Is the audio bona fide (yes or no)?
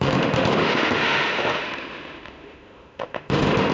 no